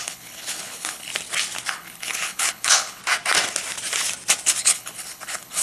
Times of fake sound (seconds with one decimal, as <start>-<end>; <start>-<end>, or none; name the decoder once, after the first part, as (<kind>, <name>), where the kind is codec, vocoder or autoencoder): 0.0-1.1 (codec, HILCodec); 1.7-3.0; 4.6-5.6

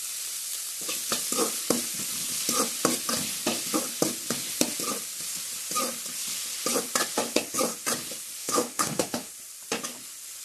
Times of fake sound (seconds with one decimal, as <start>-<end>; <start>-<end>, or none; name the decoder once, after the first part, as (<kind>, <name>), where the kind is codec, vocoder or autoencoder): 8.4-9.3 (autoencoder, DAC-VAE)

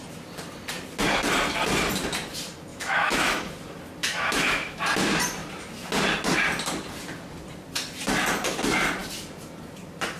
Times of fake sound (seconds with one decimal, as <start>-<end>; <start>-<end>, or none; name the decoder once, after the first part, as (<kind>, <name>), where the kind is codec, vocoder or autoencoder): 2.7-3.4 (autoencoder, DAC-VAE); 4.0-4.8

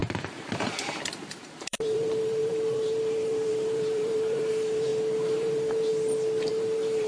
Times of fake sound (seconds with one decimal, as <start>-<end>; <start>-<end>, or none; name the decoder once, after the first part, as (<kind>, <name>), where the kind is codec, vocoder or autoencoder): 0.0-4.9 (vocoder, BigVGAN v2); 5.4-5.9; 6.5-7.1

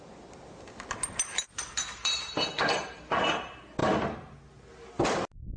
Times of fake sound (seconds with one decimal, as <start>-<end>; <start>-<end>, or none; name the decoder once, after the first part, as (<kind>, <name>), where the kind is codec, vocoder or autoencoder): none

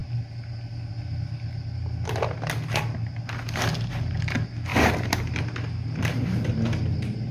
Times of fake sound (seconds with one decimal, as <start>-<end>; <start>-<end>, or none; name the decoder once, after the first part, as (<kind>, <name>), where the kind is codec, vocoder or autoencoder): 4.7-5.4 (vocoder, BigVGAN v2); 6.0-6.5

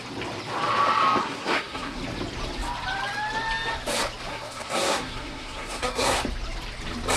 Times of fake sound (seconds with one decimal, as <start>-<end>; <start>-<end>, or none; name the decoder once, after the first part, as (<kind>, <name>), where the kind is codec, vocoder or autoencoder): 1.2-2.0 (codec, SNAC); 4.3-6.2

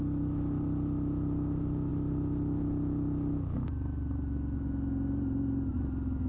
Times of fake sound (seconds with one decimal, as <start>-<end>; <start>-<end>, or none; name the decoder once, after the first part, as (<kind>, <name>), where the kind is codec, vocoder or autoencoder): none